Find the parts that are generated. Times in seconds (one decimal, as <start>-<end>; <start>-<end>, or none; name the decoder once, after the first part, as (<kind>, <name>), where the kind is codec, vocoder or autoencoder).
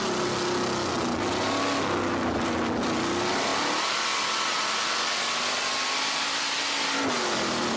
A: none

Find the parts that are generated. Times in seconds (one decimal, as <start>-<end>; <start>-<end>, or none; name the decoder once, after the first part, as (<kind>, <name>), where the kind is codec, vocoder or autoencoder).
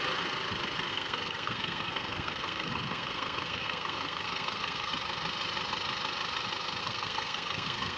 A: 0.9-4.9 (codec, SNAC); 6.8-8.0